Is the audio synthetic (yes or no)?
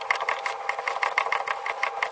no